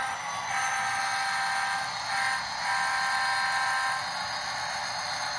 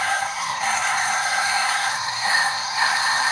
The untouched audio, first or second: first